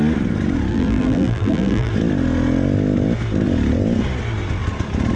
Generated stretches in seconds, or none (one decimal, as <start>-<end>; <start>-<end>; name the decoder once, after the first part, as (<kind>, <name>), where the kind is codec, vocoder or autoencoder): 0.7-1.9 (vocoder, BigVGAN v2)